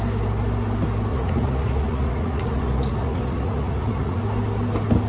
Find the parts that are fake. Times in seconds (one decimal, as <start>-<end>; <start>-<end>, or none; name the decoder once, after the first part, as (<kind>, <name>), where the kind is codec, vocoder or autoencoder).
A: 1.1-4.2 (vocoder, Vocos)